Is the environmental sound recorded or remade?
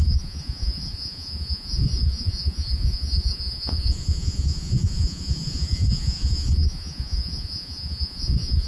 remade